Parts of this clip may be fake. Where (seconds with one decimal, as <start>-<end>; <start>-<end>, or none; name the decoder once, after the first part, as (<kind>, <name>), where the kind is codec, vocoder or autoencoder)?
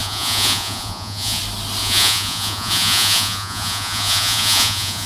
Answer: 0.0-1.4 (vocoder, Vocos); 1.8-5.1